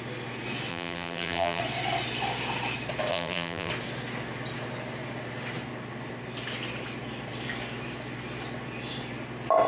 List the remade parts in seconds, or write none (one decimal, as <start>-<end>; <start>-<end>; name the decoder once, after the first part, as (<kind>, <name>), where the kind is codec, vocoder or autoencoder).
0.7-1.6 (vocoder, BigVGAN v2); 3.1-3.7